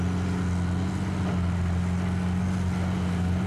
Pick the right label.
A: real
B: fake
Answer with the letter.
A